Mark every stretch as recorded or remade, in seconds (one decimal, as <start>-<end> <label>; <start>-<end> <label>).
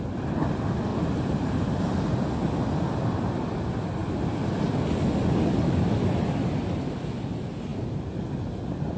0.0-0.9 recorded; 0.9-1.8 remade; 1.8-9.0 recorded